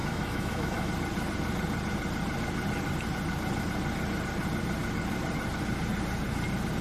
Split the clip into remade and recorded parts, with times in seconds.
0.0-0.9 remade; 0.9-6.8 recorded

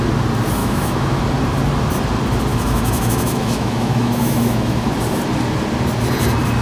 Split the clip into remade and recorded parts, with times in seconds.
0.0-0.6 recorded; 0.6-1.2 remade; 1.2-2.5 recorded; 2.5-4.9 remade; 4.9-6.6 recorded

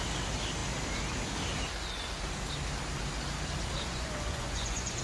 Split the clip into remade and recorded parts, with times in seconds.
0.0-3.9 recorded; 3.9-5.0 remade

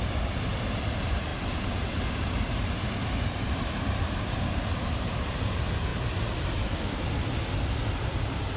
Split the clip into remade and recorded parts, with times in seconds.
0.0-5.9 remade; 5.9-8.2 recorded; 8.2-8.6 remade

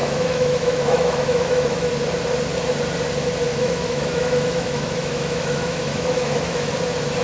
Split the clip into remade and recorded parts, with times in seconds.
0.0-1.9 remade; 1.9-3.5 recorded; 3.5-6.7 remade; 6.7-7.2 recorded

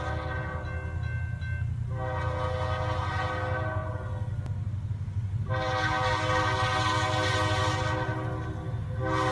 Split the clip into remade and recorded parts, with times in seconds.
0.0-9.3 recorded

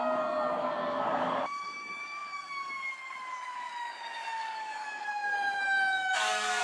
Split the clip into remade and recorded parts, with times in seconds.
0.0-6.6 remade